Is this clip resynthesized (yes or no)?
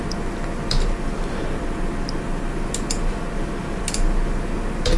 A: no